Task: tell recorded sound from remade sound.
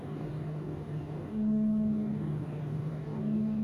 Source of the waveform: remade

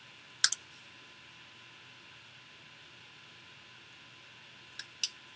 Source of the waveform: recorded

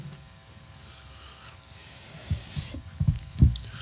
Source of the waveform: remade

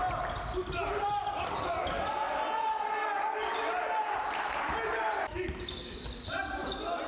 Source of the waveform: recorded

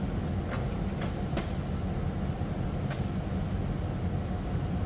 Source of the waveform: recorded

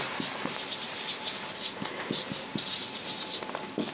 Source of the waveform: recorded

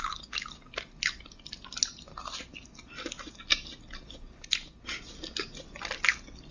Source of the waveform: recorded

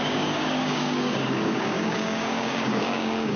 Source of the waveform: remade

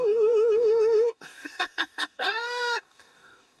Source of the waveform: remade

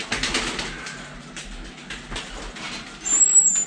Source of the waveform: recorded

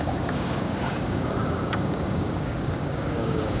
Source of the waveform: remade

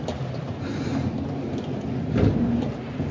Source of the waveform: recorded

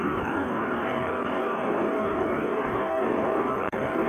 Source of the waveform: remade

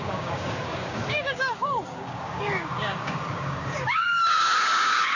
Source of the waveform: remade